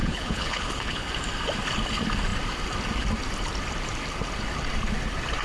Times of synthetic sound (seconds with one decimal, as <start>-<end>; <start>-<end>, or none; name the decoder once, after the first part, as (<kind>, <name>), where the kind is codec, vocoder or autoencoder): 0.0-1.1 (codec, HILCodec)